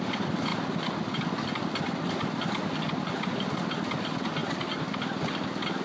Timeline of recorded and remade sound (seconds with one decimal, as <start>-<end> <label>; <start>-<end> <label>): 0.0-5.8 recorded